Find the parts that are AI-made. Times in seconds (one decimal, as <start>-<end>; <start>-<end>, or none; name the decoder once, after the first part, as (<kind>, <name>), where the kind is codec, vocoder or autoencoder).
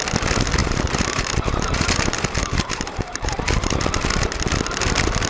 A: 0.6-3.8 (vocoder, BigVGAN v2)